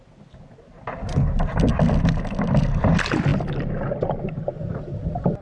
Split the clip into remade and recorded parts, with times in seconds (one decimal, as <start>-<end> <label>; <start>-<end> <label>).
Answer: 0.0-5.4 recorded